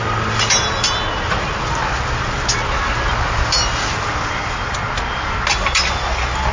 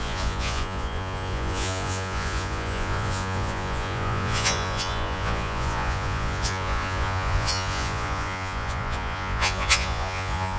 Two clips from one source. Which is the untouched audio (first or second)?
first